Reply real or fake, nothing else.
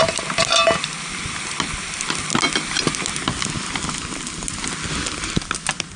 real